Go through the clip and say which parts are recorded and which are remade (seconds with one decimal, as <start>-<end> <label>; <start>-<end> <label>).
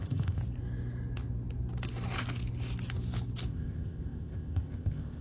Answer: 0.0-0.4 remade; 0.4-3.5 recorded; 3.5-5.2 remade